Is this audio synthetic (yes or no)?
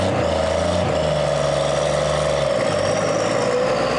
no